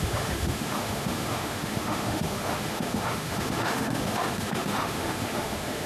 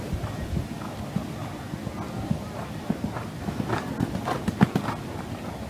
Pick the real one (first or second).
second